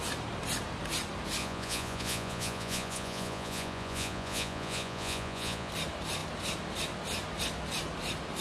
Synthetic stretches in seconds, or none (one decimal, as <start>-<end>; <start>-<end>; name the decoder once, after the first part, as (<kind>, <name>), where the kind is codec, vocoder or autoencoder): 1.4-5.7 (vocoder, Vocos)